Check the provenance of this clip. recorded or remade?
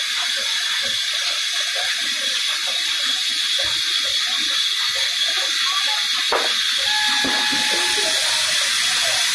recorded